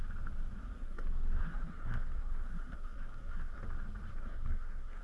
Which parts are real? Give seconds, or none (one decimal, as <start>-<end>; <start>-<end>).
0.0-0.6; 3.6-4.1